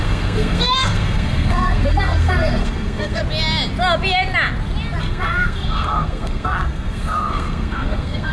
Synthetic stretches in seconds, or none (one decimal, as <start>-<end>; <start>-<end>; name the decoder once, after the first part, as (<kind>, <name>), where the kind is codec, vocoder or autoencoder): 0.0-3.2 (codec, SNAC); 5.0-8.3